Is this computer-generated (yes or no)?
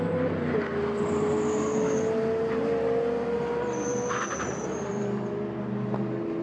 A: no